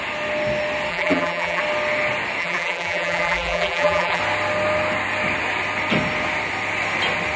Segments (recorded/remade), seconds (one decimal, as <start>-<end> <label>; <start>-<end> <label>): 0.0-0.9 recorded; 0.9-1.6 remade; 1.6-2.4 recorded; 2.4-4.2 remade; 4.2-7.4 recorded